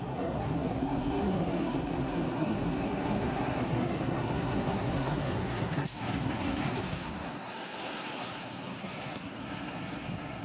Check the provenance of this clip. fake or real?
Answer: fake